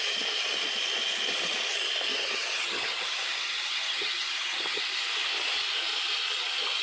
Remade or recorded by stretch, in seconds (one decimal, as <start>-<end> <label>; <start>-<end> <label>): 0.0-2.1 recorded; 2.1-4.8 remade; 4.8-6.8 recorded